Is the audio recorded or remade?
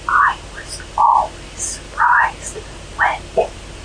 recorded